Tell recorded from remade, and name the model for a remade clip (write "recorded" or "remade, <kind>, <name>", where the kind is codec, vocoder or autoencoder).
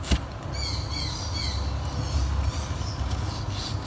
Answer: recorded